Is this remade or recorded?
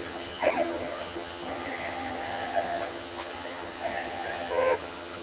remade